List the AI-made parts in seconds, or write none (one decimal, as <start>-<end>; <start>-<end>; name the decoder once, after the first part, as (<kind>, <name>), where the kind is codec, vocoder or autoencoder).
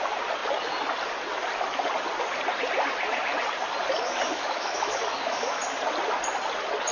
4.3-5.6 (autoencoder, DAC-VAE)